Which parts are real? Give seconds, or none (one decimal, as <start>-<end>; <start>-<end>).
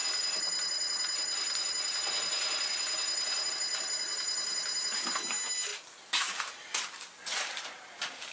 0.0-3.5; 5.7-7.2